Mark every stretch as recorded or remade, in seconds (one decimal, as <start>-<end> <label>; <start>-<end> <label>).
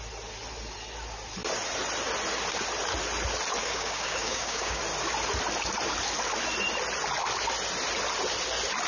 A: 0.0-3.6 recorded; 3.6-4.8 remade; 4.8-8.9 recorded